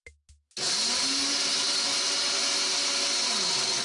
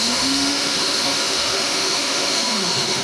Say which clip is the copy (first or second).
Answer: second